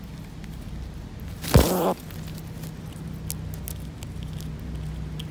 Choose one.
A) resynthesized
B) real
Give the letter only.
B